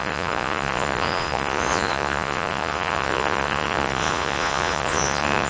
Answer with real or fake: fake